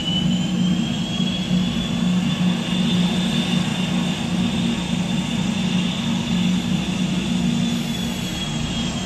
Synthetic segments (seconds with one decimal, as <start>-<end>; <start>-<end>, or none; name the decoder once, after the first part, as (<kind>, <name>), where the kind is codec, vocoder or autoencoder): none